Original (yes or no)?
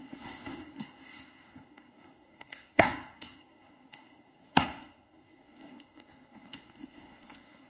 no